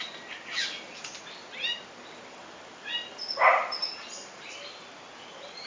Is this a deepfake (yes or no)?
no